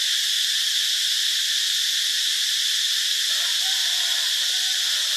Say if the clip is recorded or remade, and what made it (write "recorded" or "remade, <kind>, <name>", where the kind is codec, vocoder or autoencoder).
recorded